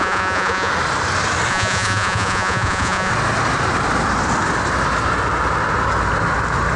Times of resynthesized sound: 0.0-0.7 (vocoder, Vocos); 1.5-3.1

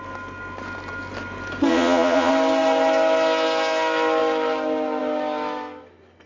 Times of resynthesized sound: 1.7-2.3 (vocoder, Vocos)

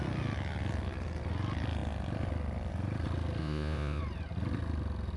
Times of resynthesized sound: 3.4-4.0 (vocoder, Vocos)